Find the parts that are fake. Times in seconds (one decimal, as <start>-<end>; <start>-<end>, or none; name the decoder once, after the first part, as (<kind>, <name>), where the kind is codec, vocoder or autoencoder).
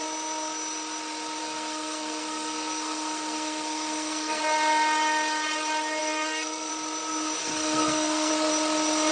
1.4-4.4 (codec, SNAC); 6.0-6.7; 7.4-8.3